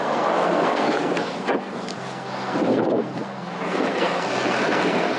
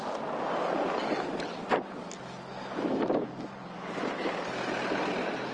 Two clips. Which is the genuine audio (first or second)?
second